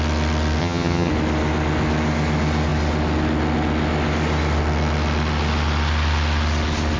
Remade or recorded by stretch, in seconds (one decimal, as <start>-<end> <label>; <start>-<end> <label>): 0.0-0.6 recorded; 0.6-1.1 remade; 1.1-7.0 recorded